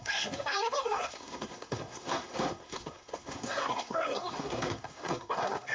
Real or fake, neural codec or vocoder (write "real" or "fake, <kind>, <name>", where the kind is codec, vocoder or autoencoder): fake, codec, SNAC